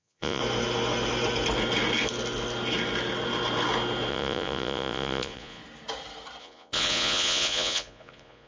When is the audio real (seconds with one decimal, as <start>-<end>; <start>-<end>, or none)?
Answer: 0.4-4.1; 5.6-6.4